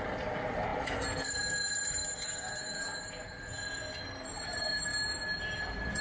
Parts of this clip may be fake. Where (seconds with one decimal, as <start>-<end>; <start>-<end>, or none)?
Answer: 0.0-2.0; 4.0-4.9; 5.6-6.0